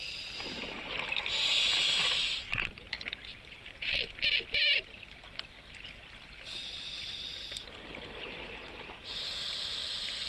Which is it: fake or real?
real